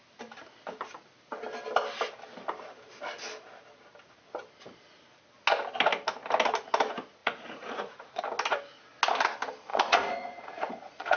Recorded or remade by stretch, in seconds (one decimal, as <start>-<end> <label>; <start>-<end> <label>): 0.0-7.2 recorded; 7.2-8.2 remade; 8.2-9.7 recorded; 9.7-11.2 remade